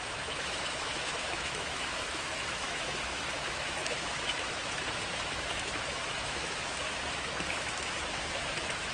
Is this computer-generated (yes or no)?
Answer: yes